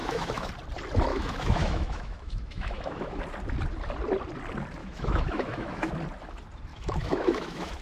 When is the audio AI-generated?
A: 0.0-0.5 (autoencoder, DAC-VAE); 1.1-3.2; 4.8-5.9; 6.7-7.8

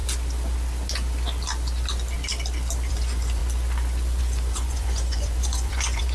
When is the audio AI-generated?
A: 2.9-3.4 (vocoder, Vocos); 4.2-6.1

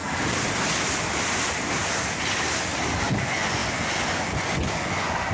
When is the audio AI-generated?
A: 3.2-5.3 (vocoder, Vocos)

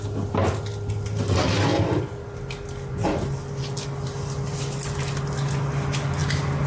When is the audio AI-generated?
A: none

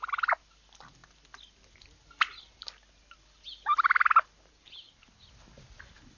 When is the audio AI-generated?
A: none